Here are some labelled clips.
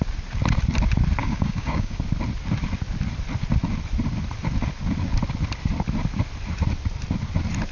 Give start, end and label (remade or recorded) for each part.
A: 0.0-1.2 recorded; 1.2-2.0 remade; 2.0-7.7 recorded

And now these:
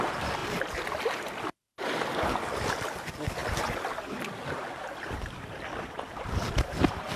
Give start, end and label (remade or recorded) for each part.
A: 0.0-7.2 recorded

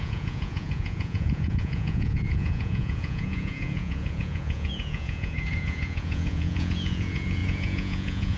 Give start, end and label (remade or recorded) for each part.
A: 0.0-8.4 remade